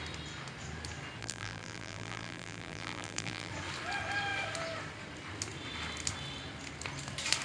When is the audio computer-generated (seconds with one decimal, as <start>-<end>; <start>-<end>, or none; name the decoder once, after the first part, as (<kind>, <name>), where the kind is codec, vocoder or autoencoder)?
1.2-3.5 (vocoder, BigVGAN v2)